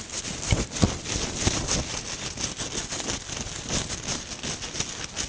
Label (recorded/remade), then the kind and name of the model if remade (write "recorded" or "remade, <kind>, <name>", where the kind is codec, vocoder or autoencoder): recorded